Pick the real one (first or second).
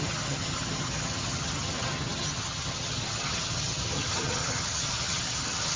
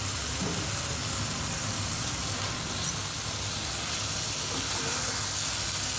second